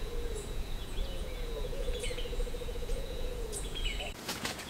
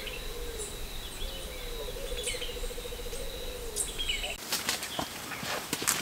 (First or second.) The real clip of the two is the second